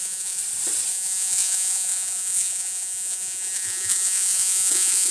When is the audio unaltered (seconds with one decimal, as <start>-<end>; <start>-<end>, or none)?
0.4-0.9